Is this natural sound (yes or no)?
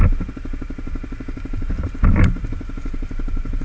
yes